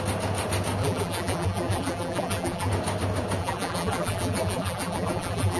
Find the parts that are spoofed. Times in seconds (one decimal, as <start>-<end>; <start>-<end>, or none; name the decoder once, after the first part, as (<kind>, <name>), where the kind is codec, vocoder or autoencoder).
0.8-2.7 (vocoder, BigVGAN v2); 3.4-5.6